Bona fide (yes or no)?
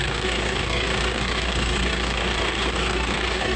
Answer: no